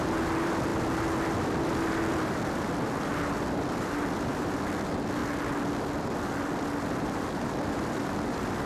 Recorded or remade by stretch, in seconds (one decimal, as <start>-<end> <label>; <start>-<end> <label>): 0.0-5.2 remade; 5.2-6.3 recorded; 6.3-8.7 remade